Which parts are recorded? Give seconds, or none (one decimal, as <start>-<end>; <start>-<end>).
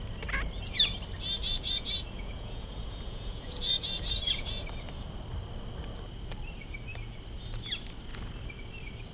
0.0-1.4; 4.6-9.1